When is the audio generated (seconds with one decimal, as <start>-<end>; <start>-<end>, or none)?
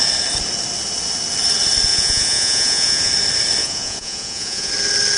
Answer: 1.9-3.1; 3.6-4.7